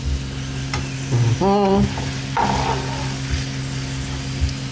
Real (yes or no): yes